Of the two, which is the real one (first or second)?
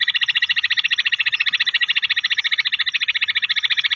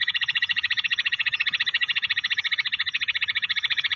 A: first